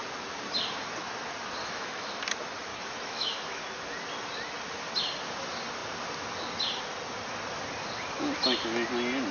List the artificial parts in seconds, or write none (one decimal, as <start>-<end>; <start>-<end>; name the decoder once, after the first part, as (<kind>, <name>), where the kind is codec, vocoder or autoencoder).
1.6-2.2 (autoencoder, DAC-VAE); 2.7-3.6